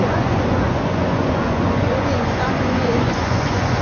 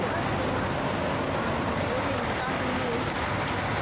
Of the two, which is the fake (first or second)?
first